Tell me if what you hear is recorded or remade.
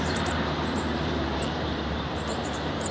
remade